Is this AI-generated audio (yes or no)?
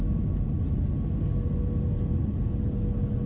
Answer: no